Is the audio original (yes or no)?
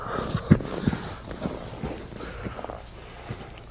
yes